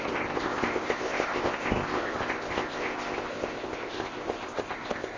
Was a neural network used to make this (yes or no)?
yes